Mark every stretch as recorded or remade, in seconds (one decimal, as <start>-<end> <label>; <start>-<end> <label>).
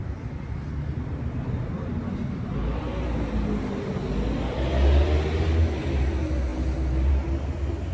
0.0-7.9 recorded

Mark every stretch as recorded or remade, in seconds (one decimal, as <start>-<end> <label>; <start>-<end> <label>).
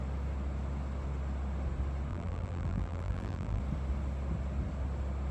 0.0-2.1 recorded; 2.1-3.6 remade; 3.6-5.3 recorded